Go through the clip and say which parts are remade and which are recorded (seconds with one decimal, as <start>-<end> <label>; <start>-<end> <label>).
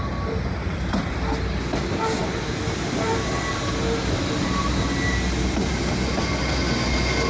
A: 0.0-7.3 recorded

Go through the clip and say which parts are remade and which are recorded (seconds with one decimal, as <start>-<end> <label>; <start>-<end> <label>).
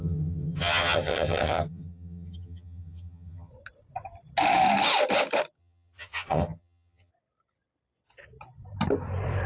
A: 0.0-3.5 remade; 3.5-5.6 recorded; 5.6-7.1 remade; 7.1-9.5 recorded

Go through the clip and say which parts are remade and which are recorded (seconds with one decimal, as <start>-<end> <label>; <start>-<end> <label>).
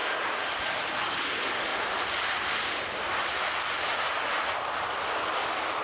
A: 0.0-0.6 remade; 0.6-1.7 recorded; 1.7-2.5 remade; 2.5-5.8 recorded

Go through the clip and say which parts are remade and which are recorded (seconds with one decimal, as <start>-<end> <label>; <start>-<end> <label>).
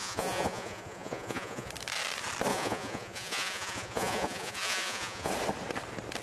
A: 0.0-1.7 remade; 1.7-2.5 recorded; 2.5-5.3 remade; 5.3-6.2 recorded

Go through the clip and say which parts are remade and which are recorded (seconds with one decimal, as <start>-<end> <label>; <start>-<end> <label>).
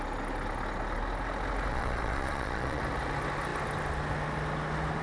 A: 0.0-1.7 recorded; 1.7-2.8 remade; 2.8-5.0 recorded